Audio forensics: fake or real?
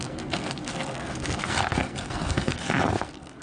fake